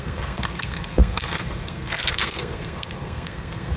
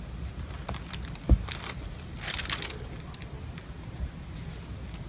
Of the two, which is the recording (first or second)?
second